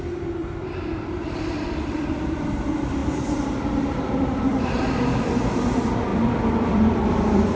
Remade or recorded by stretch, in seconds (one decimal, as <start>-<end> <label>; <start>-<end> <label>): 0.0-0.4 recorded; 0.4-2.4 remade; 2.4-4.5 recorded; 4.5-5.3 remade; 5.3-6.1 recorded; 6.1-7.6 remade